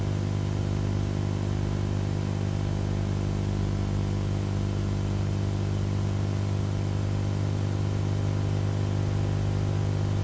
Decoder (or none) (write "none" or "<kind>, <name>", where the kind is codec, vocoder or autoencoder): none